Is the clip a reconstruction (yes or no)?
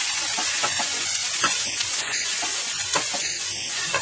yes